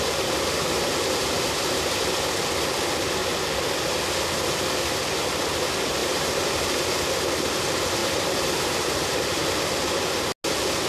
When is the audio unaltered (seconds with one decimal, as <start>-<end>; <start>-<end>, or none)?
0.0-6.0; 6.8-8.0; 9.4-10.9